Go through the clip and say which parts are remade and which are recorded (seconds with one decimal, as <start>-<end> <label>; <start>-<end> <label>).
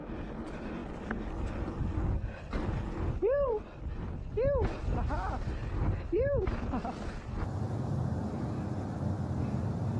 0.0-5.6 recorded; 5.6-6.6 remade; 6.6-10.0 recorded